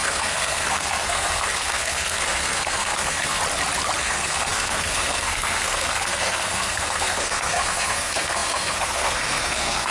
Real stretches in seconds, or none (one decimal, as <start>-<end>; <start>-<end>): 3.4-4.0